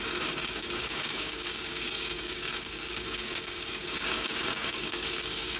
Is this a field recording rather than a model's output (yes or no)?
no